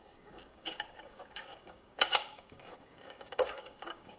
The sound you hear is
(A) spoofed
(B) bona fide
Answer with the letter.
A